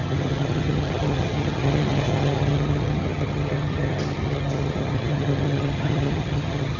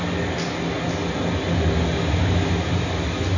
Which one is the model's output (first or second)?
first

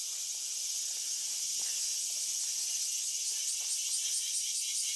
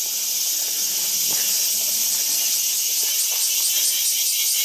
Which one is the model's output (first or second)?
first